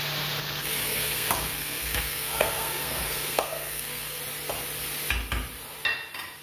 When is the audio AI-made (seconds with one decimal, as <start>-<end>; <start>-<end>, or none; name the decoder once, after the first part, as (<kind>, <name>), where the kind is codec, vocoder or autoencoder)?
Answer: 0.4-4.2 (codec, SNAC)

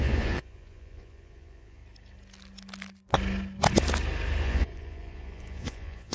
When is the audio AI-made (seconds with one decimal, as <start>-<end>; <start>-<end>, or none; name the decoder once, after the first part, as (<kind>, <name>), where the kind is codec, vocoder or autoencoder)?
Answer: 0.0-1.8 (vocoder, Vocos); 4.4-6.1

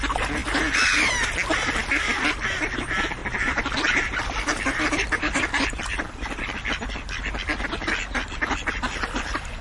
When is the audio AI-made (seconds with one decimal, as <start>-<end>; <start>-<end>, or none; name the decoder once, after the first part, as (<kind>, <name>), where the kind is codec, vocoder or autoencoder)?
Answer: 3.2-4.2 (vocoder, BigVGAN v2)

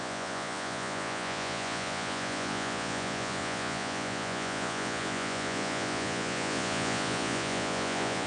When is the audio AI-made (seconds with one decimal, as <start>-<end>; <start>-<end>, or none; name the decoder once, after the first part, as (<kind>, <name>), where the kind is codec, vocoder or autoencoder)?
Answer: 0.0-8.3 (vocoder, Vocos)

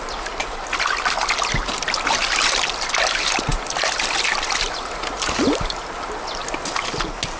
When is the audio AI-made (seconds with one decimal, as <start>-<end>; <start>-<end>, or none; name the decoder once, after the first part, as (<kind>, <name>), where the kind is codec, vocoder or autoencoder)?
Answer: none

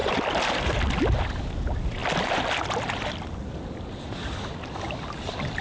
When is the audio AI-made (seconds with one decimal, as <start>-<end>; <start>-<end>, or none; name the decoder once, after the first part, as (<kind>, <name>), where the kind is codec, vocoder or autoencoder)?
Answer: none

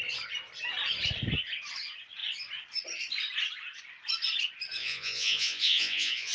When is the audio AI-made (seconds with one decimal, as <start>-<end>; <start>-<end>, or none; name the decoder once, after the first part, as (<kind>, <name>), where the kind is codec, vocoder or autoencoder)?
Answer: 4.8-6.3 (vocoder, Vocos)